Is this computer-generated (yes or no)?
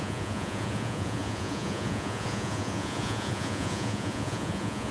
yes